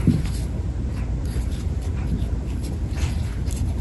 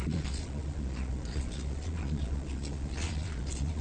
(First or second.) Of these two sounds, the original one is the first